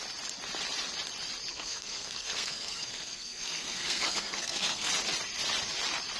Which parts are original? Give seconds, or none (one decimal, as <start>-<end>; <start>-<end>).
0.0-1.5; 4.9-6.2